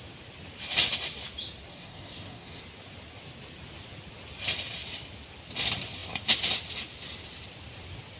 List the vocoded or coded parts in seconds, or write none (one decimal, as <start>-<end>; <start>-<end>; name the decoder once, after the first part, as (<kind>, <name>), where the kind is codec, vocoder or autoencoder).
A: 1.7-2.6 (codec, DAC)